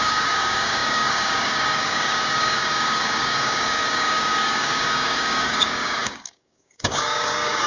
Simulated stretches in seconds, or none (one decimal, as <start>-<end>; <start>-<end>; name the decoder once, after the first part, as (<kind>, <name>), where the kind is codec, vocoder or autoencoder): 0.0-7.7 (codec, DAC)